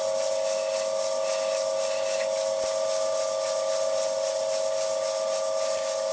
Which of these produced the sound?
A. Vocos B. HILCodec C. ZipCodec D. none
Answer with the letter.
D